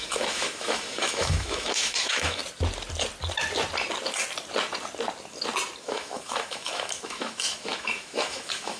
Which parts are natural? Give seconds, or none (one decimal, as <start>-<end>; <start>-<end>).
2.4-5.8